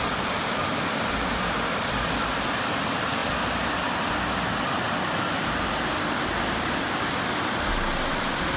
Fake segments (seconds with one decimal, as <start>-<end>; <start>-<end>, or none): none